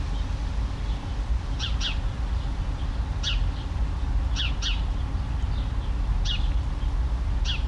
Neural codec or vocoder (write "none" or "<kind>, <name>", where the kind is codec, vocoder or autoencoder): none